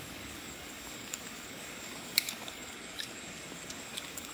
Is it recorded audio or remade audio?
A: remade